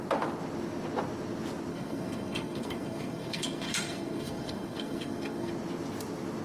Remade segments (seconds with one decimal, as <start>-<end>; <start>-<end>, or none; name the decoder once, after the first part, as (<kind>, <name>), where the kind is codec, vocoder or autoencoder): 1.7-5.5 (codec, SNAC)